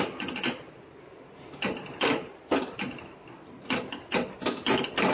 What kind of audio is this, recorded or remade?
recorded